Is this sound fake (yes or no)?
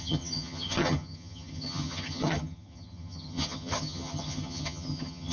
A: yes